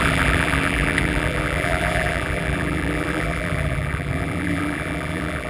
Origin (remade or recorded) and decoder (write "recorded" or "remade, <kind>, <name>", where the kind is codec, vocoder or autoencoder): remade, vocoder, BigVGAN v2